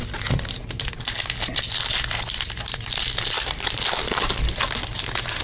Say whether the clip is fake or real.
real